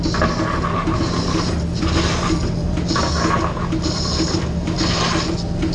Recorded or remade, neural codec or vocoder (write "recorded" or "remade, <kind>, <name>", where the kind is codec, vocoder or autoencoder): recorded